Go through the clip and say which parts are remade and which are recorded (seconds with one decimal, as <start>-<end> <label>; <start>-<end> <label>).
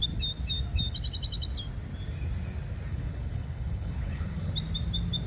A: 0.0-2.9 recorded; 2.9-4.5 remade; 4.5-5.3 recorded